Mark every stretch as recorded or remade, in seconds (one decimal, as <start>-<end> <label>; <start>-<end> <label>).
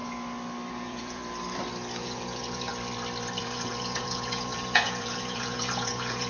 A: 0.0-0.7 recorded; 0.7-1.2 remade; 1.2-2.0 recorded; 2.0-2.7 remade; 2.7-3.4 recorded; 3.4-6.3 remade